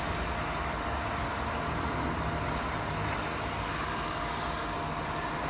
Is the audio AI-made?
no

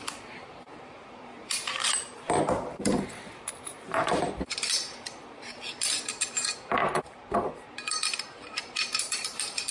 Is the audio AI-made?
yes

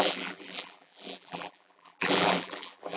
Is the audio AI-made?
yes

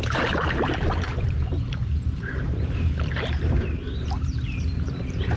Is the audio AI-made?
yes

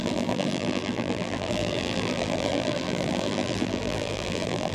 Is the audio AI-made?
yes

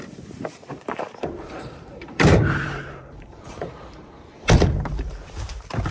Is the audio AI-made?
yes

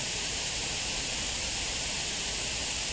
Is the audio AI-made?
yes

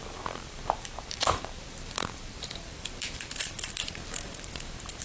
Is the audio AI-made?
yes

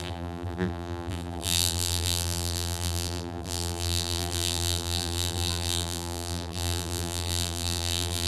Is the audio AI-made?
yes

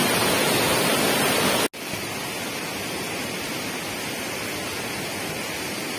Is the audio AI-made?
no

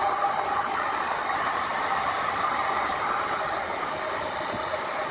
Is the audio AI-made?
no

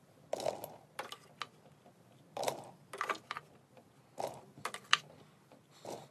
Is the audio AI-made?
no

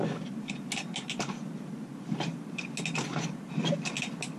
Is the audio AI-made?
no